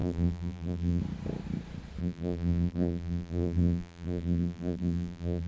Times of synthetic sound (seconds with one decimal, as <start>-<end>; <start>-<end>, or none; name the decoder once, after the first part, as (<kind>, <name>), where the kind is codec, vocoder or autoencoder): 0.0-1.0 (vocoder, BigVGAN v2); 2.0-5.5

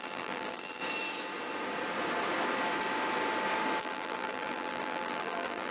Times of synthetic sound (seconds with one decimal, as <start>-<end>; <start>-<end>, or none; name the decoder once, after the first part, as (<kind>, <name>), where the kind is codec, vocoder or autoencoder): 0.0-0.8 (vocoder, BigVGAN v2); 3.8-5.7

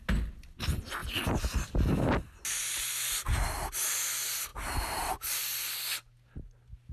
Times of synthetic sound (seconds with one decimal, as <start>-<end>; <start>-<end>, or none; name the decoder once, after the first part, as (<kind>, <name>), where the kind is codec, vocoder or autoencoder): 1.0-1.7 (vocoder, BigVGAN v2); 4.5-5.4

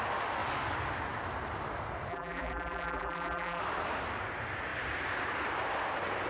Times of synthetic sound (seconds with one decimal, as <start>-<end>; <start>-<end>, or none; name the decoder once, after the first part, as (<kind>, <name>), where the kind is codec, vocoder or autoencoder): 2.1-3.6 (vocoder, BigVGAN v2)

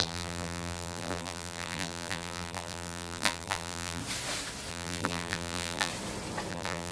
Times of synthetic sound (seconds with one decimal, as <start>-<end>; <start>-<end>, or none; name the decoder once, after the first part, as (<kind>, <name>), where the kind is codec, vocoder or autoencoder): 0.0-4.0 (vocoder, BigVGAN v2); 4.7-5.9; 6.5-6.9